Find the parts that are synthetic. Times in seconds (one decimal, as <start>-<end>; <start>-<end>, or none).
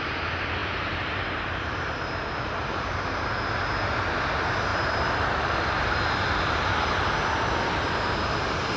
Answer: 0.6-2.1; 4.7-7.0